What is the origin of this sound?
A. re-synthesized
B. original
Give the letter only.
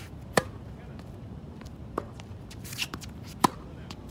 A